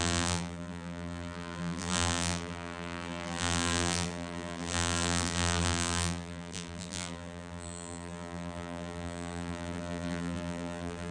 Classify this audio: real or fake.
fake